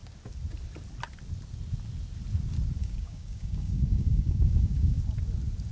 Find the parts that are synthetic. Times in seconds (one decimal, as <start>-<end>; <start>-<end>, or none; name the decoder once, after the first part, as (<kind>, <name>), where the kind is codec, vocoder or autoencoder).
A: 2.8-5.0 (codec, DAC)